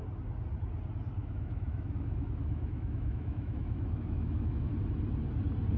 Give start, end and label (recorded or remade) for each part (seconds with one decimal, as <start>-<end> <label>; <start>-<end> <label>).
0.0-1.2 recorded; 1.2-4.7 remade; 4.7-5.8 recorded

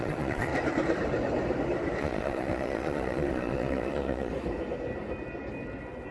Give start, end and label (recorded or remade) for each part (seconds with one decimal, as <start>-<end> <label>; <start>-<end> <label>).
0.0-0.5 remade; 0.5-2.0 recorded; 2.0-4.3 remade; 4.3-6.1 recorded

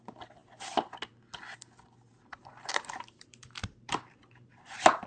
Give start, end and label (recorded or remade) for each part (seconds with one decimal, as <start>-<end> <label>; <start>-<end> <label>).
0.0-2.1 recorded; 2.1-5.1 remade

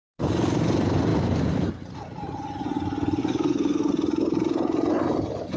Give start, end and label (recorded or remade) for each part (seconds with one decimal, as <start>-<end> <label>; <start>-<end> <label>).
0.0-3.2 recorded; 3.2-3.9 remade; 3.9-5.6 recorded